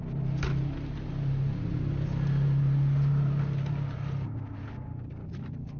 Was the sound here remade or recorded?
recorded